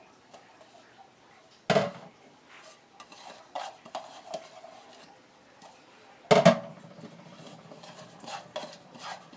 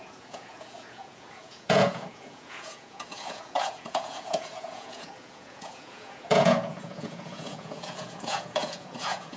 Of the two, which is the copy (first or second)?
second